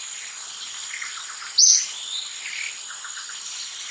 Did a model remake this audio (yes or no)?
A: no